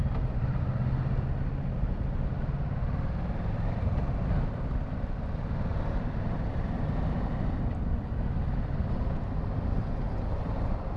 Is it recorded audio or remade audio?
recorded